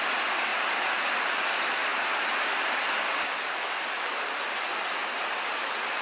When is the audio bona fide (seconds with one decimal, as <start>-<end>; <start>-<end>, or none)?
0.5-1.1; 1.9-4.0; 5.0-6.0